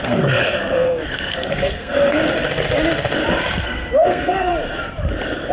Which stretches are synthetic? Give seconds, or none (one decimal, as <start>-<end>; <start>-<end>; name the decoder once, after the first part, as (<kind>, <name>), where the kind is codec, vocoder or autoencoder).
0.0-2.2 (codec, SNAC); 3.5-4.5